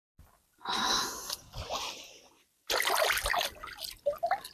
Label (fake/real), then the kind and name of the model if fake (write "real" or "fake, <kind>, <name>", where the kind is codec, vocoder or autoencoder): real